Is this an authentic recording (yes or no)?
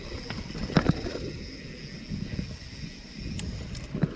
yes